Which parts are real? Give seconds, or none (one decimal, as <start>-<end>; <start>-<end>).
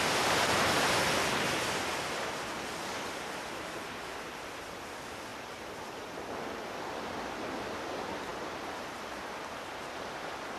0.0-10.6